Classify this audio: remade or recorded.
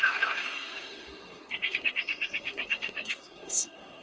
remade